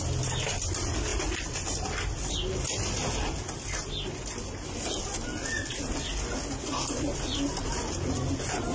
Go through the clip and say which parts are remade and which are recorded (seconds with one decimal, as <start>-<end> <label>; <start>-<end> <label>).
0.0-8.7 recorded